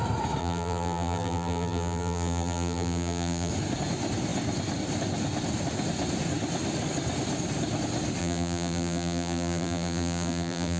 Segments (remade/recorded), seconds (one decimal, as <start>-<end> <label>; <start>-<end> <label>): 0.0-0.4 recorded; 0.4-3.5 remade; 3.5-8.2 recorded; 8.2-10.8 remade